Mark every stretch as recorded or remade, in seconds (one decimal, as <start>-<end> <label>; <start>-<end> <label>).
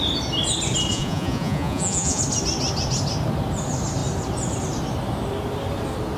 0.0-0.9 recorded; 0.9-2.2 remade; 2.2-6.2 recorded